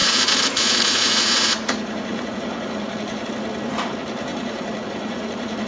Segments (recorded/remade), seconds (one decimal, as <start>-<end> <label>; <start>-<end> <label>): 0.0-3.3 remade; 3.3-4.3 recorded; 4.3-5.7 remade